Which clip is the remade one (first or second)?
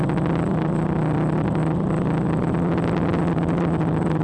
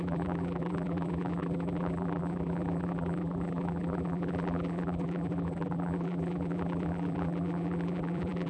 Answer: second